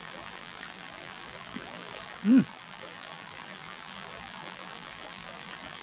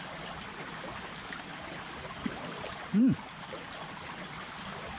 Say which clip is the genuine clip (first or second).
second